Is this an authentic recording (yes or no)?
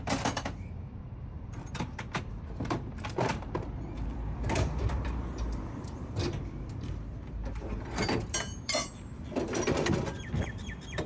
no